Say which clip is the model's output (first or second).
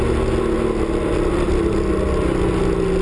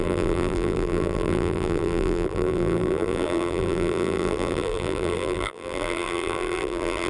second